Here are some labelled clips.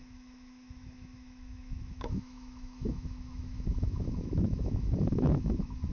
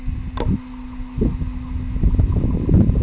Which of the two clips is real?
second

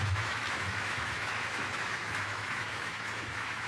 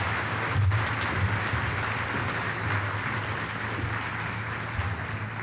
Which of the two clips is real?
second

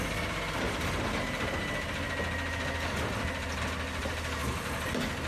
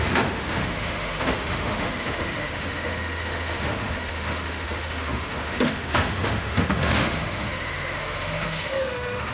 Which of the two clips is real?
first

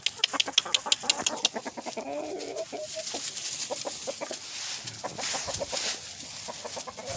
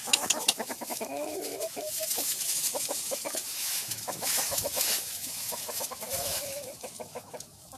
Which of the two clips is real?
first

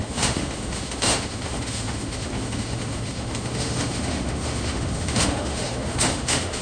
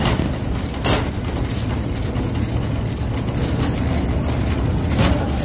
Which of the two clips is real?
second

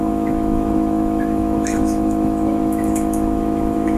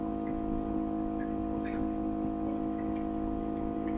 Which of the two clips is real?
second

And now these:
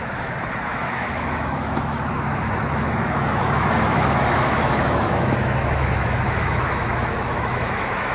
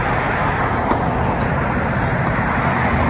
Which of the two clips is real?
second